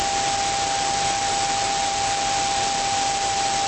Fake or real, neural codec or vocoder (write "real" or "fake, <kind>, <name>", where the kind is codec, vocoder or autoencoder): fake, vocoder, BigVGAN v2